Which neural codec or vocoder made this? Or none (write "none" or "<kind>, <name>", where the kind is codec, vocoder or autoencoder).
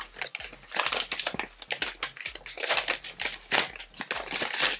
none